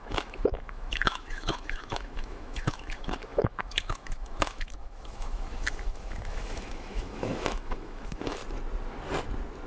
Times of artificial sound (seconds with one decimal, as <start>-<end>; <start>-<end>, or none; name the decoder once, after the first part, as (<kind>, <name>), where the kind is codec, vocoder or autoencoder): 0.0-8.4 (autoencoder, DAC-VAE)